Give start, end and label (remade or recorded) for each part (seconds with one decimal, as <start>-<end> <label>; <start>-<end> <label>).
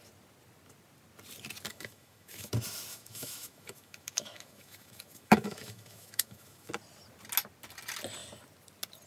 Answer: 0.0-1.7 recorded; 1.7-2.5 remade; 2.5-2.9 recorded; 2.9-6.7 remade; 6.7-9.1 recorded